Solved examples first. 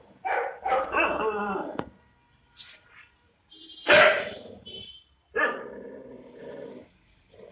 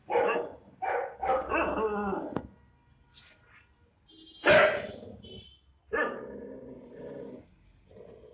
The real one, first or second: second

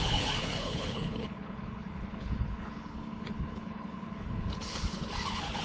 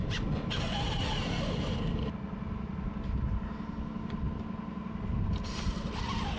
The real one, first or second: second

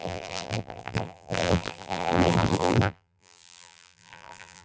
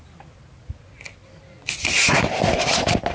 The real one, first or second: second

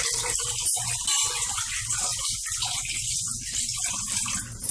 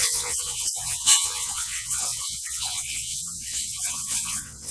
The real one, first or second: first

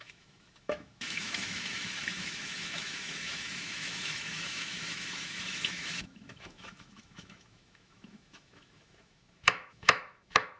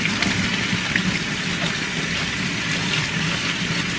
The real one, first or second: second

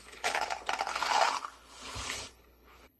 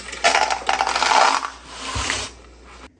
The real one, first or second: second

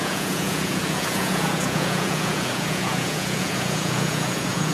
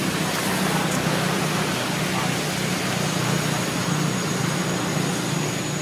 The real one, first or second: second